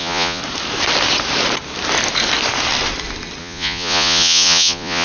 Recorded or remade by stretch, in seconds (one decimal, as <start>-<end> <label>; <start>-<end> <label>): 0.0-0.4 remade; 0.4-3.4 recorded; 3.4-5.0 remade